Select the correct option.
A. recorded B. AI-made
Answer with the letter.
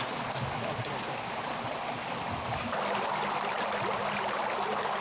A